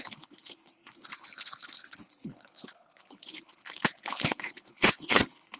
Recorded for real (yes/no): no